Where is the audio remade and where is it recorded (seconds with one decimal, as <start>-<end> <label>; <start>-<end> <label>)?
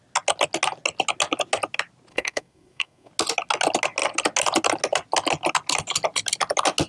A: 0.0-2.1 recorded; 2.1-3.1 remade; 3.1-6.9 recorded